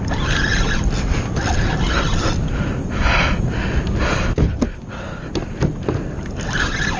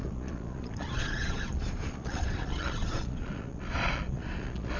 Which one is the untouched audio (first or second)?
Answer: first